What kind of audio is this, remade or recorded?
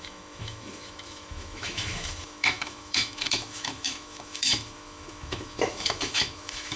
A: remade